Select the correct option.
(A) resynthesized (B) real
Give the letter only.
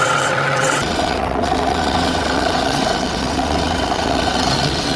A